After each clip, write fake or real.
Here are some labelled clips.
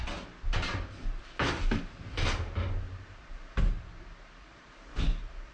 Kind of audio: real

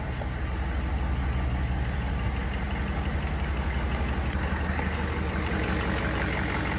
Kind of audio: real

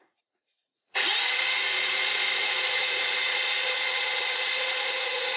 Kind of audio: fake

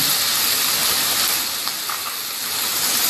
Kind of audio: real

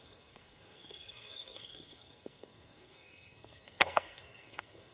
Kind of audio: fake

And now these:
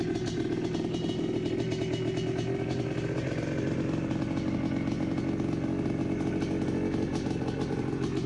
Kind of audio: real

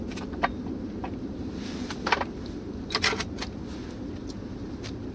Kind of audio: real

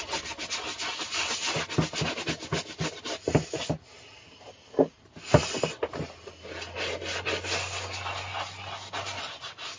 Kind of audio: real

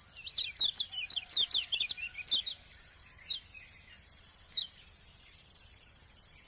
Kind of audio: real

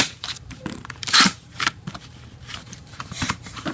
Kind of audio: fake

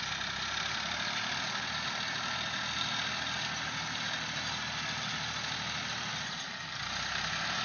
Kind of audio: real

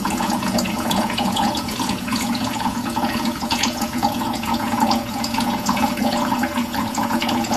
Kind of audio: fake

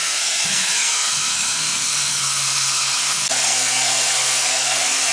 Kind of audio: fake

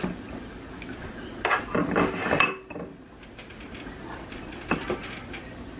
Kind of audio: real